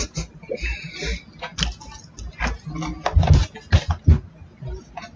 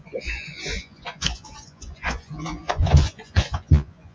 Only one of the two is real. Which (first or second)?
first